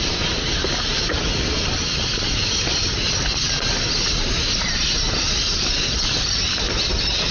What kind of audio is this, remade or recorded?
recorded